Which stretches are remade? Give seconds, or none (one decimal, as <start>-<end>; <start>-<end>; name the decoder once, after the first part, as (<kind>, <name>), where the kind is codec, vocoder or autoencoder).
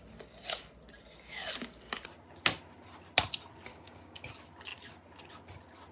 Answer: 3.7-4.3 (codec, DAC)